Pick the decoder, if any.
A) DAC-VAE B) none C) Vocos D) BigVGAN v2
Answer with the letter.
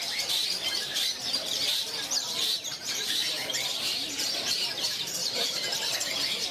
D